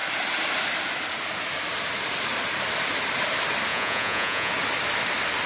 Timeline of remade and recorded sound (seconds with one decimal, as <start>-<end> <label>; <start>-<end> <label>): 0.0-3.7 recorded; 3.7-4.5 remade; 4.5-5.5 recorded